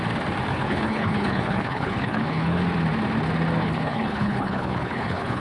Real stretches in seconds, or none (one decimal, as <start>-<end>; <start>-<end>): 0.0-0.5; 2.6-3.6